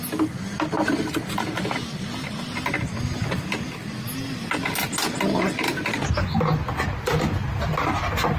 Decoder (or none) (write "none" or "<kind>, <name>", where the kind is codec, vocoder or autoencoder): none